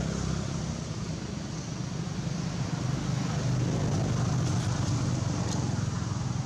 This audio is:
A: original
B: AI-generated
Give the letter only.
A